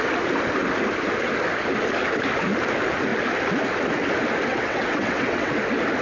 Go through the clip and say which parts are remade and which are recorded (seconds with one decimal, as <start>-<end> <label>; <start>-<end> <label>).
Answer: 0.0-4.5 recorded; 4.5-5.5 remade; 5.5-6.0 recorded

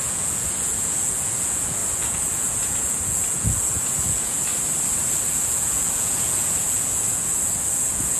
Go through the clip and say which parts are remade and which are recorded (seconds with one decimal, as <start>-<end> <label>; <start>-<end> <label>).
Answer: 0.0-4.5 remade; 4.5-5.3 recorded; 5.3-8.2 remade

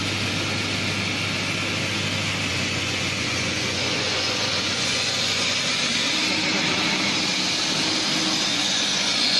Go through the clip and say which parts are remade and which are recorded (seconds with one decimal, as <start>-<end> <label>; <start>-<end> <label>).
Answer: 0.0-2.5 recorded; 2.5-5.8 remade; 5.8-8.5 recorded; 8.5-9.4 remade

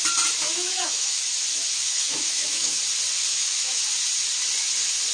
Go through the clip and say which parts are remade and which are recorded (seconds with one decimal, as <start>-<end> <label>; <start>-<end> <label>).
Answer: 0.0-0.4 recorded; 0.4-1.2 remade; 1.2-1.7 recorded; 1.7-2.8 remade; 2.8-3.3 recorded; 3.3-3.8 remade; 3.8-5.1 recorded